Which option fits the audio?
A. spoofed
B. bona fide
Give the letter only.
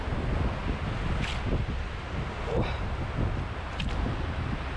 B